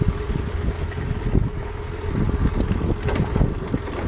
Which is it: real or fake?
real